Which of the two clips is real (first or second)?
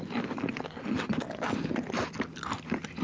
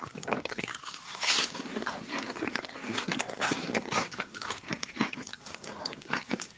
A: first